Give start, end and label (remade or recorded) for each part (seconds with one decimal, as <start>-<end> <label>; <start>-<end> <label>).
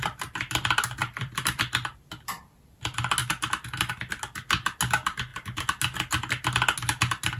0.0-1.0 recorded; 1.0-2.2 remade; 2.2-3.2 recorded; 3.2-4.1 remade; 4.1-7.4 recorded